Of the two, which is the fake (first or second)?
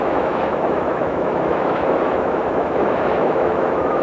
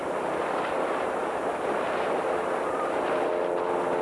first